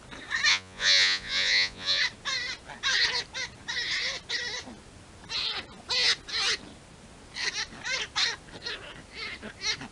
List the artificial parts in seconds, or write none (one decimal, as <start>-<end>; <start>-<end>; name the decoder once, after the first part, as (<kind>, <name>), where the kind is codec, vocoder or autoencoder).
0.5-2.0 (vocoder, Vocos)